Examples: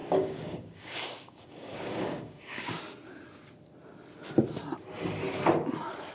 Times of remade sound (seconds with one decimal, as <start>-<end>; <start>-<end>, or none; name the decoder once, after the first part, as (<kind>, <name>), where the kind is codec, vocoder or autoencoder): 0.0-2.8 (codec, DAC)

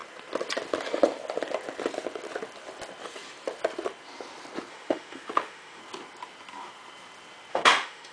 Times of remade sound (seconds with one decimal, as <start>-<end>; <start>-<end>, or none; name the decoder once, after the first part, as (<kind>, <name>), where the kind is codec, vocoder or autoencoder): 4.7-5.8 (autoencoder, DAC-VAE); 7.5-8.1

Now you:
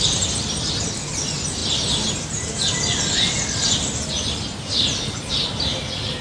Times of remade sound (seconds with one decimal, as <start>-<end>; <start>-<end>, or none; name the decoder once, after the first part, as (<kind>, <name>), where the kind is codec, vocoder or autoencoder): none

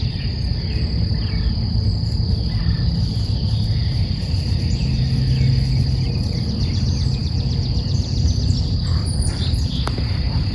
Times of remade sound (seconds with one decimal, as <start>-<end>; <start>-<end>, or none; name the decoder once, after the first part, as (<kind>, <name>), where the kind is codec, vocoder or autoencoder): 3.8-4.6 (vocoder, BigVGAN v2)

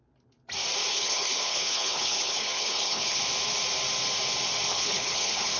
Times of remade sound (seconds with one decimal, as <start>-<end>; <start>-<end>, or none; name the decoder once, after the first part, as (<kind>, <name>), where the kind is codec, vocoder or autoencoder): 0.9-3.2 (codec, HILCodec); 4.7-5.6